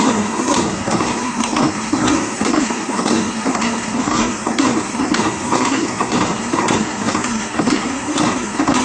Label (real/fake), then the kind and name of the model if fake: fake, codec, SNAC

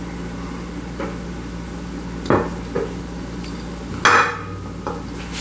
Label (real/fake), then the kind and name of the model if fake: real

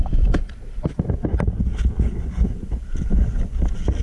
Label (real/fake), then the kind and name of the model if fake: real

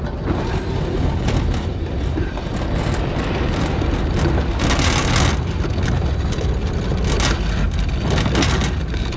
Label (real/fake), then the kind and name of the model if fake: real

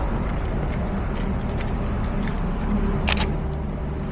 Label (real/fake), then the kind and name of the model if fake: real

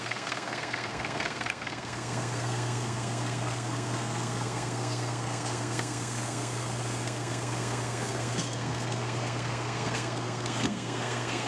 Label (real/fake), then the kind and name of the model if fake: fake, codec, SNAC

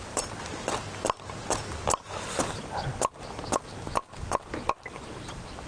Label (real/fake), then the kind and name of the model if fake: real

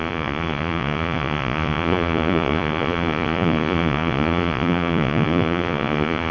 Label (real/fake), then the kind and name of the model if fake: fake, vocoder, Vocos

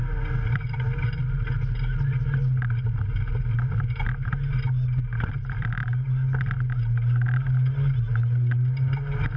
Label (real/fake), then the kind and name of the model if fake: real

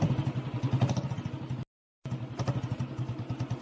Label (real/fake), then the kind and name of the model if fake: real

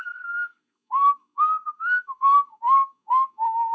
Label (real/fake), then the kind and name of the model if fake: fake, codec, SNAC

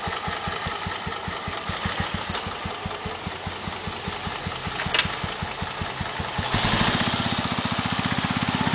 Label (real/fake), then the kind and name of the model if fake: real